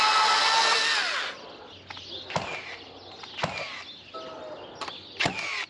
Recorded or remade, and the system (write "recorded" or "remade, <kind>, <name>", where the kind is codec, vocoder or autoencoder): recorded